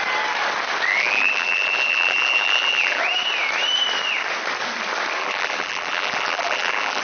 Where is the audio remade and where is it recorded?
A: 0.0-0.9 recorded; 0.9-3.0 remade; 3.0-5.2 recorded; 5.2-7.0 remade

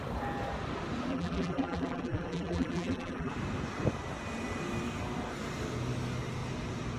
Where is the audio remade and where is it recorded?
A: 0.0-1.1 recorded; 1.1-3.3 remade; 3.3-7.0 recorded

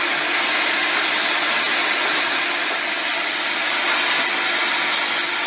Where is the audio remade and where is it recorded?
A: 0.0-5.5 recorded

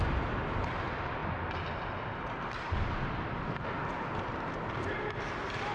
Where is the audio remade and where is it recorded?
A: 0.0-5.7 recorded